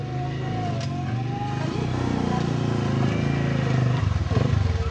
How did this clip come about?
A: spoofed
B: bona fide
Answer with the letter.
B